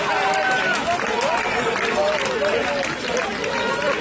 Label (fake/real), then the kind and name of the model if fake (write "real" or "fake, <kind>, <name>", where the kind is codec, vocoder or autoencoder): real